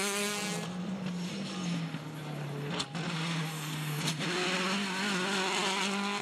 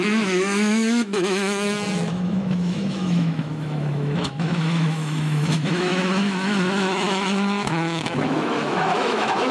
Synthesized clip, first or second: second